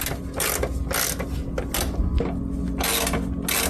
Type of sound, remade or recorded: recorded